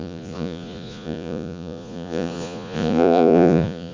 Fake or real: fake